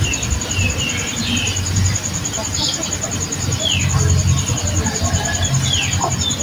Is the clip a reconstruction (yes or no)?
no